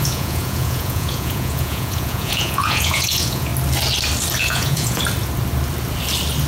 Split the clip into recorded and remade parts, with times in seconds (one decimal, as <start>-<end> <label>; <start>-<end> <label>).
0.0-3.5 remade; 3.5-4.4 recorded; 4.4-5.0 remade; 5.0-6.5 recorded